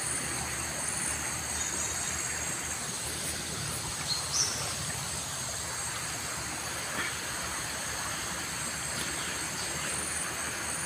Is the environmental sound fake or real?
real